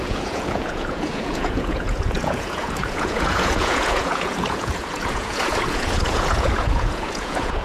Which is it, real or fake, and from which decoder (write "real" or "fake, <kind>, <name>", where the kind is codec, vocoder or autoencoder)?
fake, vocoder, Vocos